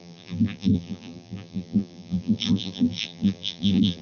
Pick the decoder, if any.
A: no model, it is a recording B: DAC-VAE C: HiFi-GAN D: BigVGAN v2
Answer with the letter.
D